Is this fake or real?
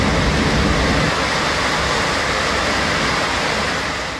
real